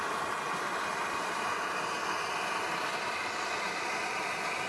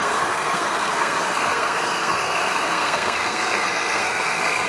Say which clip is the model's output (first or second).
second